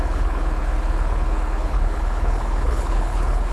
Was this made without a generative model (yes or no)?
no